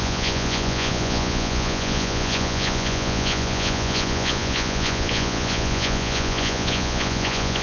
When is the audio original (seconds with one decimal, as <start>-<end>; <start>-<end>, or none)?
none